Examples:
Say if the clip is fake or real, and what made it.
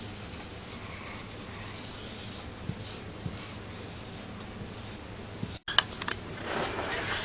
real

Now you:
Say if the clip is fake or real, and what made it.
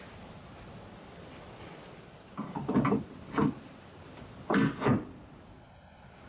real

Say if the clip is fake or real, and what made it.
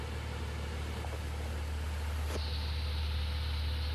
real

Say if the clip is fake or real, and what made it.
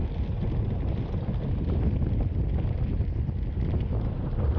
real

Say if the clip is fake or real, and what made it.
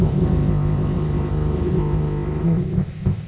fake, codec, ZipCodec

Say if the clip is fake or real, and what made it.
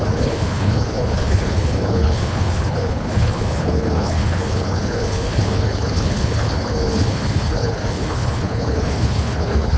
fake, codec, HILCodec